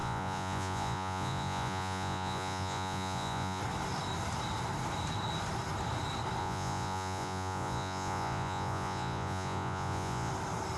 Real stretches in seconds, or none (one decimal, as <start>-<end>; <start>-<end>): 3.6-6.4; 10.3-10.8